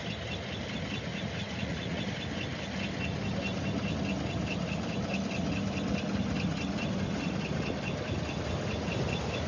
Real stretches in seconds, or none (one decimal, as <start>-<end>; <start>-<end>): 0.0-1.1; 2.0-9.5